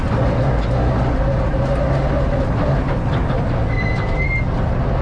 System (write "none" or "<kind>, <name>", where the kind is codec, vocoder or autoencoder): none